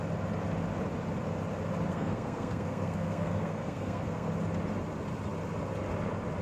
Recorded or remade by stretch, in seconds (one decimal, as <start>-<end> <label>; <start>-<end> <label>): 0.0-1.9 recorded; 1.9-4.3 remade; 4.3-6.4 recorded